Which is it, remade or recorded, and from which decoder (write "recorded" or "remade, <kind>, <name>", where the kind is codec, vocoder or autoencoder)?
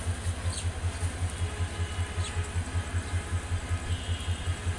recorded